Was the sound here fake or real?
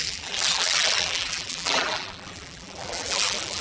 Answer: fake